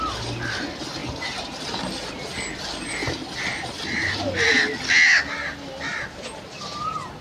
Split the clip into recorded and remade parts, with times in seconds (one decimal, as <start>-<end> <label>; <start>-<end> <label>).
0.0-7.2 recorded